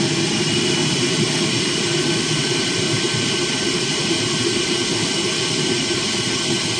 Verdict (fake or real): fake